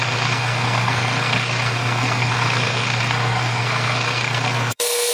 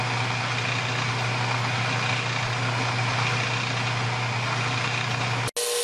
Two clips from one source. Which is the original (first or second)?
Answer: second